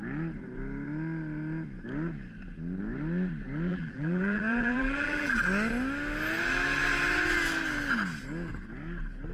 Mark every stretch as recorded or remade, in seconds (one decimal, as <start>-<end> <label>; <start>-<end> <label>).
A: 0.0-3.7 recorded; 3.7-5.4 remade; 5.4-9.3 recorded